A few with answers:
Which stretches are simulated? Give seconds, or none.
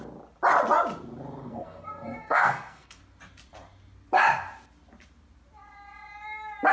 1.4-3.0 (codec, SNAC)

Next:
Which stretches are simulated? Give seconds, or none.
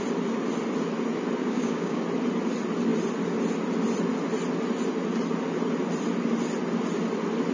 1.4-2.0 (codec, DAC)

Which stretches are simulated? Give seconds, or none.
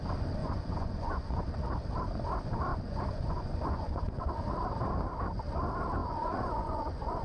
0.4-1.4 (vocoder, Vocos); 2.7-4.3; 6.0-7.2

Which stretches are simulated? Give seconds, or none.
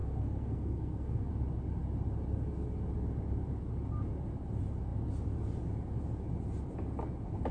0.0-1.3 (codec, SNAC)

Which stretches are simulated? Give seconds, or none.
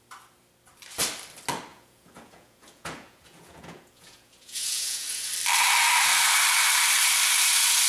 1.7-5.3 (vocoder, Vocos)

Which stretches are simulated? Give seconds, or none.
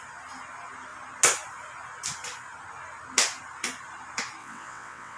4.4-5.2 (vocoder, WaveNeXt)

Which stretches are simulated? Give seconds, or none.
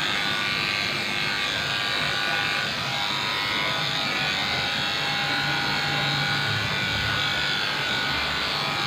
none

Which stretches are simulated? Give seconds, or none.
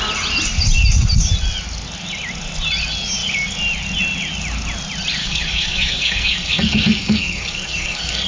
5.2-8.3 (codec, SNAC)